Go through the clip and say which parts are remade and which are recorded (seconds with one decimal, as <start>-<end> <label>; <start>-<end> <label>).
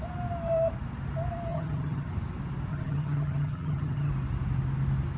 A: 0.0-1.5 recorded; 1.5-2.1 remade; 2.1-2.7 recorded; 2.7-4.1 remade; 4.1-5.2 recorded